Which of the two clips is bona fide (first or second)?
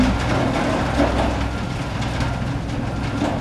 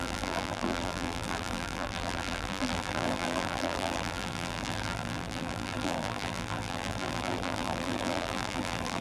first